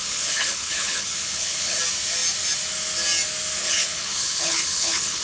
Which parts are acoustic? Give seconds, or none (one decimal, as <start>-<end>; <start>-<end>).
1.8-3.6